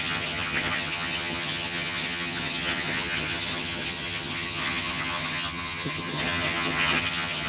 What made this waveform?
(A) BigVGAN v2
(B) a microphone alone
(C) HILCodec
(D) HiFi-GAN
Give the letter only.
D